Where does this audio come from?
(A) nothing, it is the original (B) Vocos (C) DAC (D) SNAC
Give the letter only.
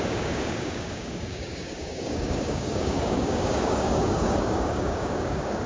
C